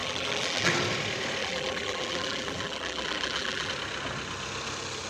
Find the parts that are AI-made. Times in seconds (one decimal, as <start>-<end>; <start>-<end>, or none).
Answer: 0.0-0.7; 1.4-3.7